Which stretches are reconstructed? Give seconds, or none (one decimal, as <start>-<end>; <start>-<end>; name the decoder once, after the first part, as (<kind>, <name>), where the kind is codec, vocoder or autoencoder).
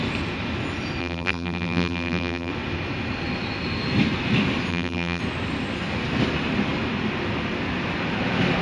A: 1.0-2.5 (vocoder, BigVGAN v2); 4.7-5.2